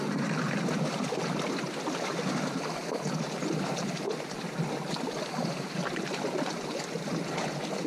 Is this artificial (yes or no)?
no